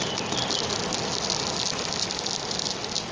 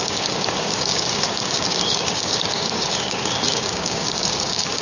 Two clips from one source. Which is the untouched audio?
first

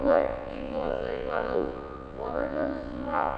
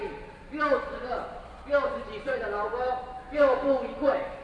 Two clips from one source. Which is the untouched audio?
second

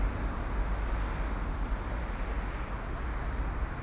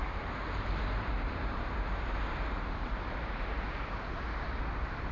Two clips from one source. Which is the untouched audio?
first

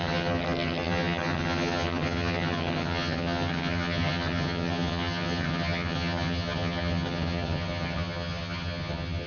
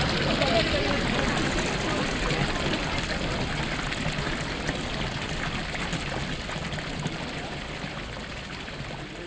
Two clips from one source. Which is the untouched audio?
second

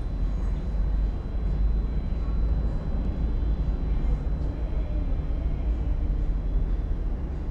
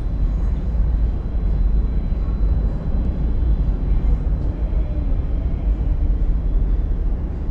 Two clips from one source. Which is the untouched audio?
first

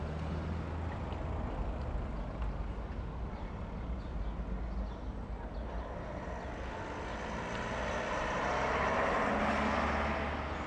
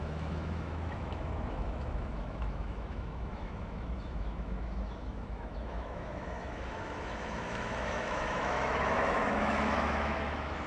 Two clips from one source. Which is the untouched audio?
first